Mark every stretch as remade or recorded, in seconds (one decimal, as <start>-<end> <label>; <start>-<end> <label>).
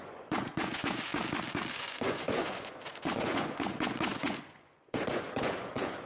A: 0.0-1.1 remade; 1.1-1.7 recorded; 1.7-6.1 remade